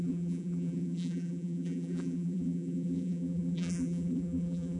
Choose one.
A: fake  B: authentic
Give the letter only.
A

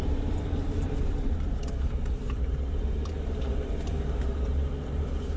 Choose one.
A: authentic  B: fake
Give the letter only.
B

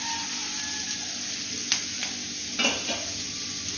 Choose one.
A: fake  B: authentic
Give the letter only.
B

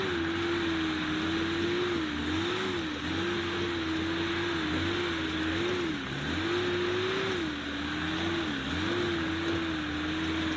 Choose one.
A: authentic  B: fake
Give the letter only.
A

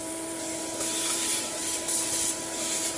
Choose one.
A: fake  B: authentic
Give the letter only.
A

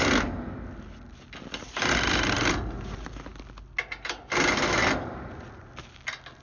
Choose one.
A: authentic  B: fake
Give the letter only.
A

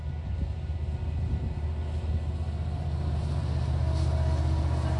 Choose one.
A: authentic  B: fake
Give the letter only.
A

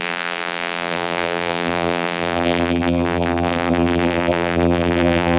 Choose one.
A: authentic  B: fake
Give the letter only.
B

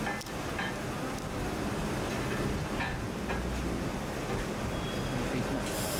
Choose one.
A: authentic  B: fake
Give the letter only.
A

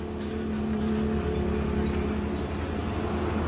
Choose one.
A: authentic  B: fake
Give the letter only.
A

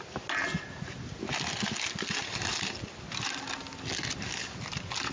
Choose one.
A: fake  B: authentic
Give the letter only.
B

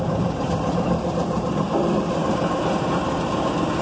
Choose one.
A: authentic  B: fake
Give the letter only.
B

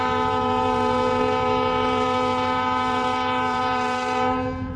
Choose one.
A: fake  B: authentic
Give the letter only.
A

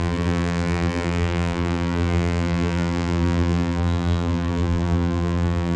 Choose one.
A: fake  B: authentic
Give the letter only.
A